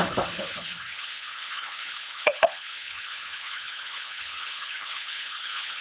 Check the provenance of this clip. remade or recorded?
remade